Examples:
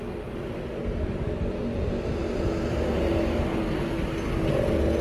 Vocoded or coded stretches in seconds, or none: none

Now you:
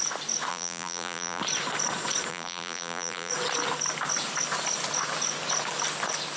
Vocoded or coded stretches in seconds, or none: 0.5-1.4 (vocoder, BigVGAN v2); 2.3-3.3

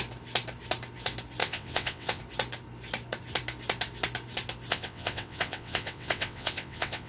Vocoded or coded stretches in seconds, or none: 1.4-2.2 (vocoder, WaveNeXt); 4.7-7.1

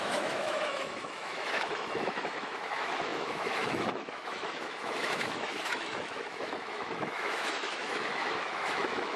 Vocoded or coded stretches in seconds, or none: 0.0-9.2 (autoencoder, DAC-VAE)